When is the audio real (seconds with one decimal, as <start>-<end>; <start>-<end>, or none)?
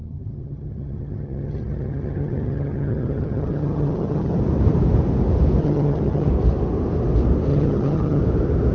4.4-5.6; 6.3-7.5; 8.2-8.7